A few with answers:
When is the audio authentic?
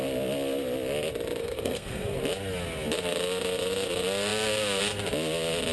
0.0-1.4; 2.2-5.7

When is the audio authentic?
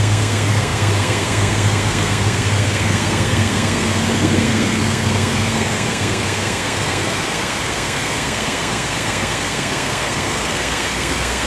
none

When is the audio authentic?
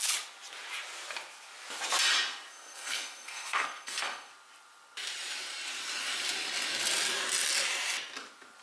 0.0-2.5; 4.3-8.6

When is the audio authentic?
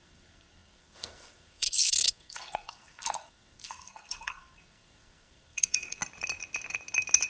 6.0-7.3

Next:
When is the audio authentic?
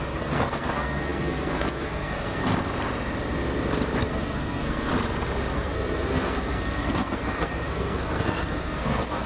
2.4-4.0; 4.9-5.5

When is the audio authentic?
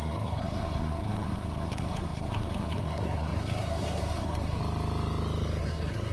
4.6-5.6